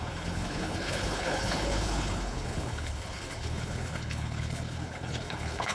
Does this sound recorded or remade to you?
remade